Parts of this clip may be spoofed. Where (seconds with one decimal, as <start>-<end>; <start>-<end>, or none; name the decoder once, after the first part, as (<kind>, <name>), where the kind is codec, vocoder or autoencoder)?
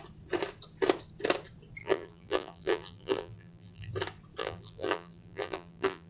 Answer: 1.8-3.9 (vocoder, BigVGAN v2); 4.4-6.1